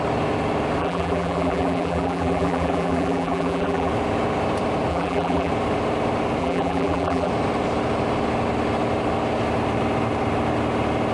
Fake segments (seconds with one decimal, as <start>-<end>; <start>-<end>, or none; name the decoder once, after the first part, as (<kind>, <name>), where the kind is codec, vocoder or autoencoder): 0.8-3.9 (vocoder, BigVGAN v2); 4.9-5.5; 6.4-7.3